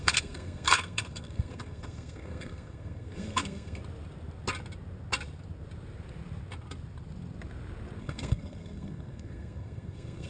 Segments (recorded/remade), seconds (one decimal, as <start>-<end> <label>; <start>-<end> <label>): 0.0-3.8 remade; 3.8-8.0 recorded; 8.0-10.3 remade